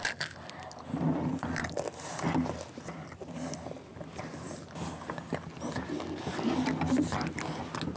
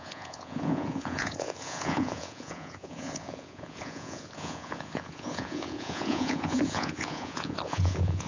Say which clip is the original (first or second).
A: first